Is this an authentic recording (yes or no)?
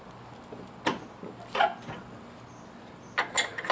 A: yes